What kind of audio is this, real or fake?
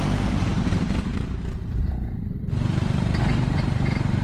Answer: fake